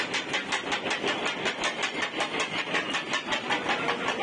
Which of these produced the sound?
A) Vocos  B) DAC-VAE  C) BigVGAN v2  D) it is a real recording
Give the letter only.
C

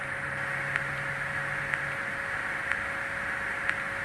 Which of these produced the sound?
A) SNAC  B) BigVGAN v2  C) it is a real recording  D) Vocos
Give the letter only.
C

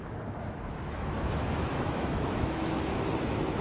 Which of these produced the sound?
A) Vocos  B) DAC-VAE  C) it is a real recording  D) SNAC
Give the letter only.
B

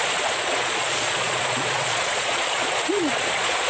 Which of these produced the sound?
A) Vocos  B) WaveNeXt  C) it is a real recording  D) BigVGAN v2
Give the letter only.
A